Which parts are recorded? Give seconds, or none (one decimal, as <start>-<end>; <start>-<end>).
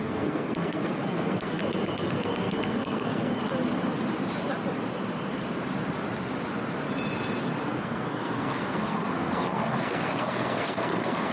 1.6-2.1; 3.4-7.7